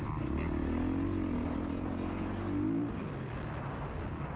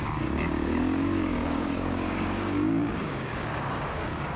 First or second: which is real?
first